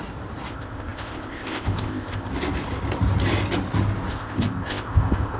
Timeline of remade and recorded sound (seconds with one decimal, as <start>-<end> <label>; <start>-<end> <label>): 0.0-0.5 recorded; 0.5-2.3 remade; 2.3-4.1 recorded; 4.1-5.4 remade